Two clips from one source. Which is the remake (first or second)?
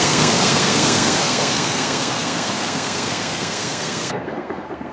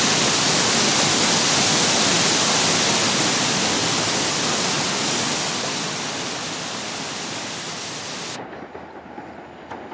first